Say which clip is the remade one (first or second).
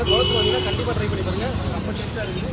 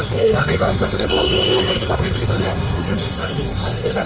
second